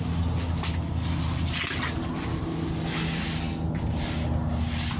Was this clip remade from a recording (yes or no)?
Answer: no